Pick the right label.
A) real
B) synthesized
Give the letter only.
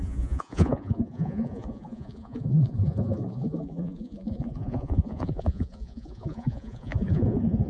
B